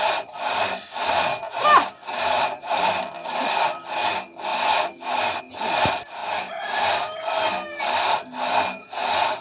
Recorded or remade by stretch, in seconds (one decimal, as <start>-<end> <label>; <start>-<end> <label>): 0.0-9.4 recorded